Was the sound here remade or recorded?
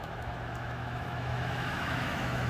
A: remade